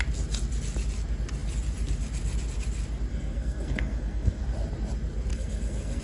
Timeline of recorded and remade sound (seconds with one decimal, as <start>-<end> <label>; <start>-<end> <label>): 0.0-3.1 recorded; 3.1-4.4 remade; 4.4-5.3 recorded; 5.3-6.0 remade